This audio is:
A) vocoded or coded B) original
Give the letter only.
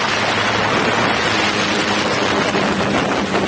B